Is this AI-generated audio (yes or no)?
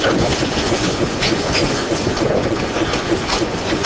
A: yes